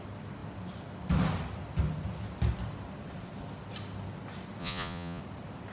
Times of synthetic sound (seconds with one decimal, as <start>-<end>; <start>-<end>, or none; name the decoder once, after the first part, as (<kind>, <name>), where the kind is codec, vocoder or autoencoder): 4.6-5.2 (vocoder, Vocos)